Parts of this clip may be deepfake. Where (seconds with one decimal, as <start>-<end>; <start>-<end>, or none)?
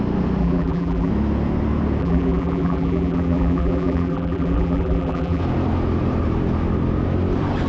0.4-1.1; 2.0-5.4